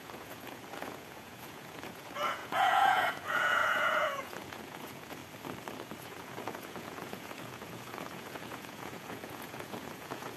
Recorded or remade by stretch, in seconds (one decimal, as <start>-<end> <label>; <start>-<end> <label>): 0.0-5.2 remade; 5.2-6.0 recorded; 6.0-10.4 remade